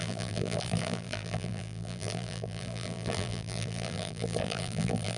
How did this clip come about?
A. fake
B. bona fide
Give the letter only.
A